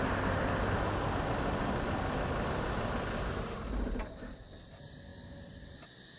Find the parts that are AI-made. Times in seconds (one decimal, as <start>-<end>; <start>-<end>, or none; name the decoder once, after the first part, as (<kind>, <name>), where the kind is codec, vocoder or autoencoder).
none